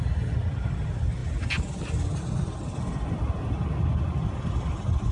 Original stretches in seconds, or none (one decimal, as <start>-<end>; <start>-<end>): 0.0-5.1